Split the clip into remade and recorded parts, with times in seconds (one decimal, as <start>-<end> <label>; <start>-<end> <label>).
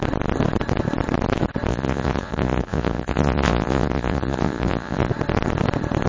0.0-1.7 recorded; 1.7-5.1 remade; 5.1-6.1 recorded